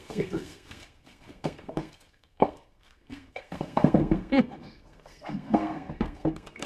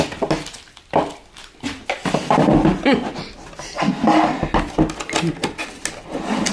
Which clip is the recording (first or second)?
second